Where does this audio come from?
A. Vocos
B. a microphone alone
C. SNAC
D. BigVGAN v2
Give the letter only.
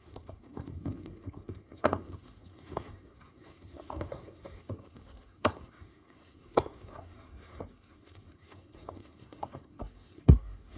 C